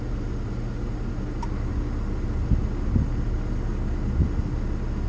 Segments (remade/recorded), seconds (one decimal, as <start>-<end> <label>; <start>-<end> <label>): 0.0-5.1 recorded